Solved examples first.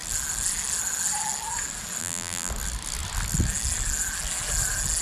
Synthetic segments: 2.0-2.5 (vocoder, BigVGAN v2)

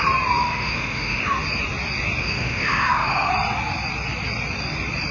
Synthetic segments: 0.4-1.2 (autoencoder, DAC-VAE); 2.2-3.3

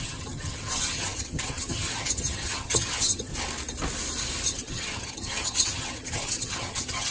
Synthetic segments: 0.0-3.3 (vocoder, HiFi-GAN); 4.5-7.1

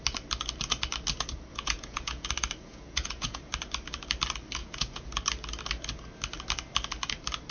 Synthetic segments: 1.5-2.3 (vocoder, Vocos); 2.7-3.4; 4.6-5.1

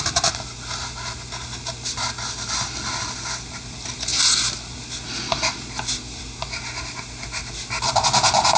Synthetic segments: none

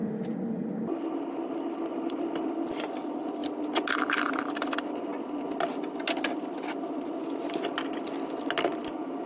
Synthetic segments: 0.0-1.1 (vocoder, BigVGAN v2); 1.9-2.5

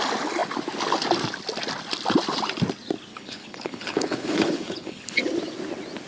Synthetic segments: 3.1-5.2 (codec, HILCodec)

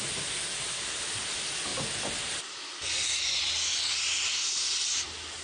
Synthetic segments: none